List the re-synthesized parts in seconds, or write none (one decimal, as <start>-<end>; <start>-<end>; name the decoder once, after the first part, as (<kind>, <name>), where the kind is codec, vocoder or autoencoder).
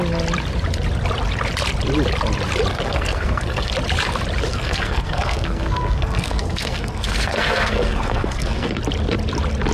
2.7-3.7 (codec, SNAC); 4.5-8.8